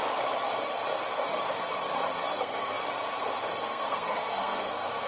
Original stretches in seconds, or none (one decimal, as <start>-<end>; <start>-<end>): 0.0-2.3; 2.8-3.6